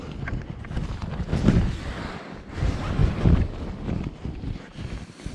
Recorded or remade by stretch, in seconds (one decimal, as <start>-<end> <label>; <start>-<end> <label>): 0.0-3.0 recorded; 3.0-3.9 remade; 3.9-5.3 recorded